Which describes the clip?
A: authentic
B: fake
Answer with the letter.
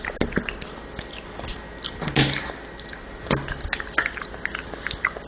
A